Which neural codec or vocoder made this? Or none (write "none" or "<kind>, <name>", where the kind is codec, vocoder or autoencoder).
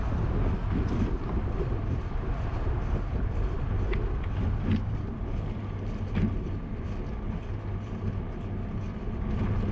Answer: none